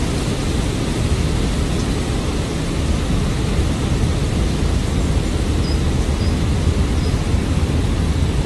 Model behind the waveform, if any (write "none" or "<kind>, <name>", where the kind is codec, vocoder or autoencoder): none